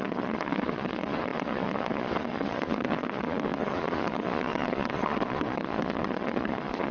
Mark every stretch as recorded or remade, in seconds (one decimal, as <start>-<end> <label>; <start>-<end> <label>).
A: 0.0-6.9 remade

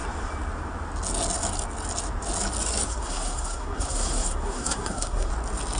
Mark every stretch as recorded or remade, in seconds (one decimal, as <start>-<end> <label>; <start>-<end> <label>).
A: 0.0-2.9 recorded; 2.9-5.3 remade; 5.3-5.8 recorded

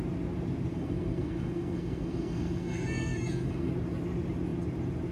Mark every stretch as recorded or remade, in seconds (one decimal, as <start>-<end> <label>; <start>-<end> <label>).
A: 0.0-0.7 recorded; 0.7-3.7 remade; 3.7-5.1 recorded

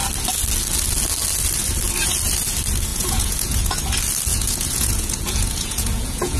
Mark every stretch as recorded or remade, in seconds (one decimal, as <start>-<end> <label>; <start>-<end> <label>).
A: 0.0-2.9 recorded; 2.9-3.8 remade; 3.8-4.3 recorded; 4.3-6.4 remade